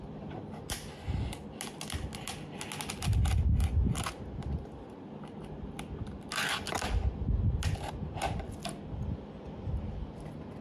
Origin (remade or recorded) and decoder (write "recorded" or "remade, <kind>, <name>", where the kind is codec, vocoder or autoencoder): recorded